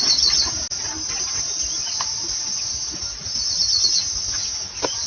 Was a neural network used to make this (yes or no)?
no